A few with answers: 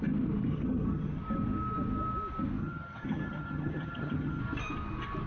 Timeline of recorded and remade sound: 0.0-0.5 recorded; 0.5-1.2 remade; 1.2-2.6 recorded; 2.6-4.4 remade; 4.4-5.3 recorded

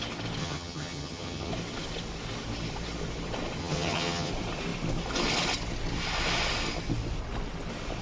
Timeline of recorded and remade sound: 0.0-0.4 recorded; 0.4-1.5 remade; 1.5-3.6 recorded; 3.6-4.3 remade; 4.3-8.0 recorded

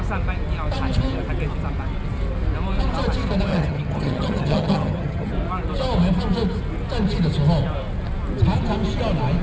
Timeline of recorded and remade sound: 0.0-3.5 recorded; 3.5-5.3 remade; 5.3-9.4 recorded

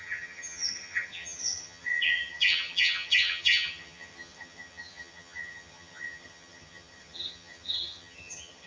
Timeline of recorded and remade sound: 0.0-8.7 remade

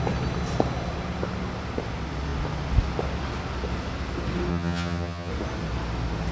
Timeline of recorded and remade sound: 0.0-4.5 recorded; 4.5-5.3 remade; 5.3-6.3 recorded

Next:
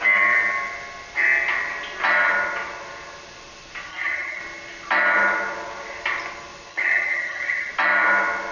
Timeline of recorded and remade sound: 0.0-3.9 recorded; 3.9-4.4 remade; 4.4-6.7 recorded; 6.7-7.7 remade; 7.7-8.5 recorded

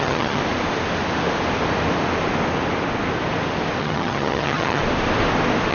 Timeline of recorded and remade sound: 0.0-0.4 remade; 0.4-3.8 recorded; 3.8-4.8 remade; 4.8-5.7 recorded